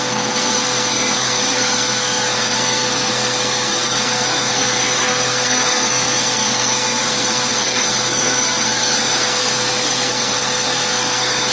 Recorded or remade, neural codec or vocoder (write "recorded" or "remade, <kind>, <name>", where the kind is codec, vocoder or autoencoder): remade, codec, SNAC